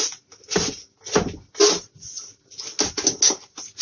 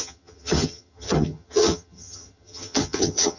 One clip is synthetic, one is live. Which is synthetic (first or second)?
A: second